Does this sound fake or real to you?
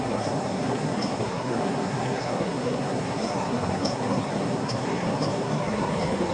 fake